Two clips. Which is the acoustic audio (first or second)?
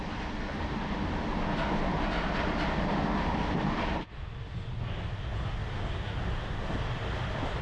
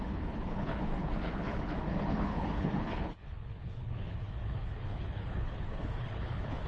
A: first